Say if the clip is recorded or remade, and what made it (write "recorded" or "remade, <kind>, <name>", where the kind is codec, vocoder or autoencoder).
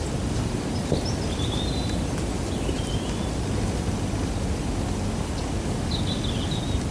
recorded